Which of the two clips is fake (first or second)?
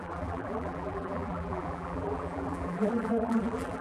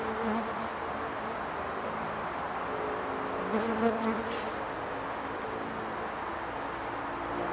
first